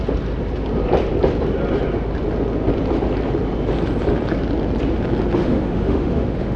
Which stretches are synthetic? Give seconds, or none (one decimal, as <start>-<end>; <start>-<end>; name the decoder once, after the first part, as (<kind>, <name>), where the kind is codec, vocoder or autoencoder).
5.4-6.6 (autoencoder, DAC-VAE)